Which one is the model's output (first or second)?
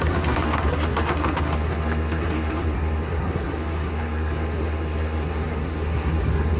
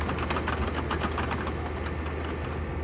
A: first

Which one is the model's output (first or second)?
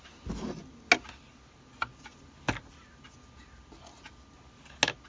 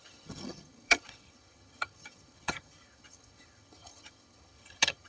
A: second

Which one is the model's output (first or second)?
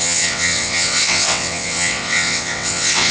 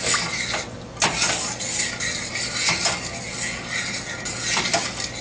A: first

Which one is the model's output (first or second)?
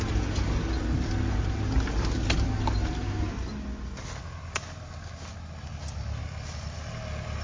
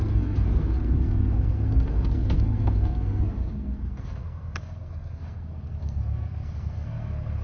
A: second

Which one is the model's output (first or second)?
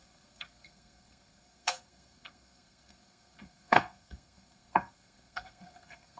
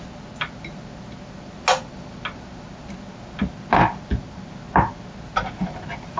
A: first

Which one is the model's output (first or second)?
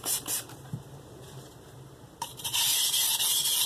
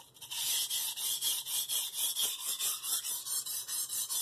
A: first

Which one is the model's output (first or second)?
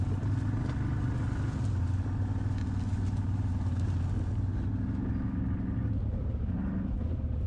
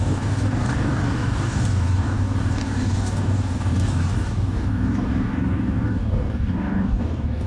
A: second